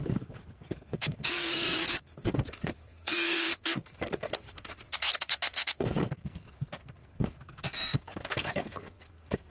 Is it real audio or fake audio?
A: fake